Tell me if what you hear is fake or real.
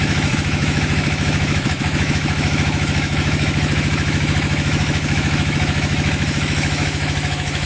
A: fake